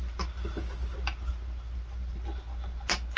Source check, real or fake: real